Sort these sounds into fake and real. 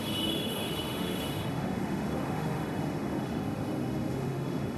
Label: fake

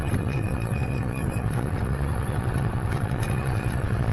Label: fake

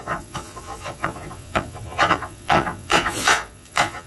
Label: fake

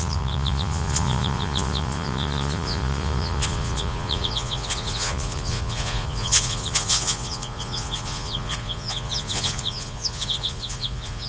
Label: fake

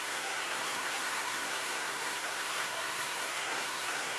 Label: fake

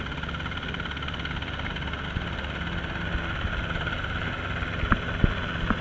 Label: real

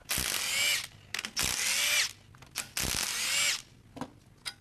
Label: real